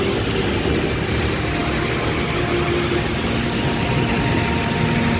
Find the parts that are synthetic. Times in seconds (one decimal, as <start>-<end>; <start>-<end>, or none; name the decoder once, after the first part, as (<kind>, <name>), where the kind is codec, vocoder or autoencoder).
none